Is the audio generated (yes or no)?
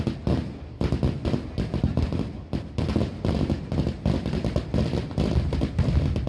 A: no